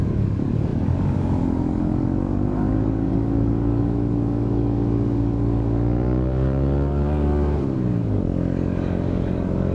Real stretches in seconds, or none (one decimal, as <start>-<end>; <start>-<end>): none